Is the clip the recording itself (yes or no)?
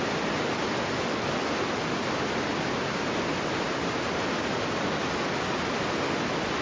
yes